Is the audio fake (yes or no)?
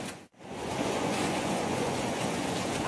yes